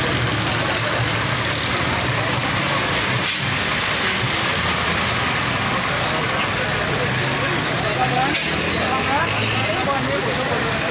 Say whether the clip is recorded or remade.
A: recorded